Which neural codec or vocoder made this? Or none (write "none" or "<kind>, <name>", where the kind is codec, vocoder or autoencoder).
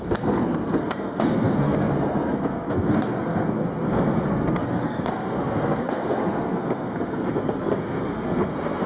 codec, SNAC